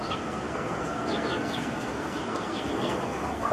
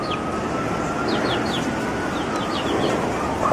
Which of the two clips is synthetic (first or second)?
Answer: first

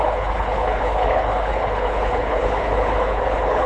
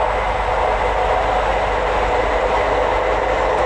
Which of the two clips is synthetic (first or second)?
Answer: first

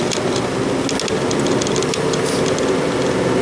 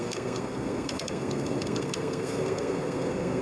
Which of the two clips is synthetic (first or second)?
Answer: second